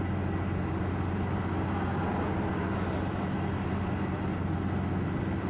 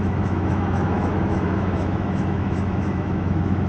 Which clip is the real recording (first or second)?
first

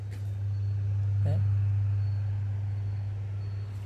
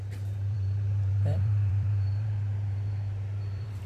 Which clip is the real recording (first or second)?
first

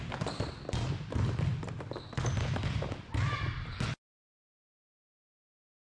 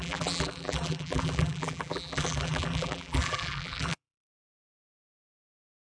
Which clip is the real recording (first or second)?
first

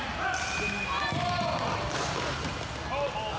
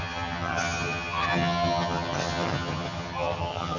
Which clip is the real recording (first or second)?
first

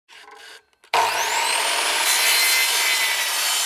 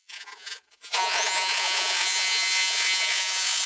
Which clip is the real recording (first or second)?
first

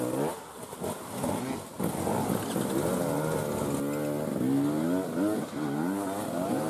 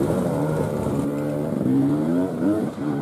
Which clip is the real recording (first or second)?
first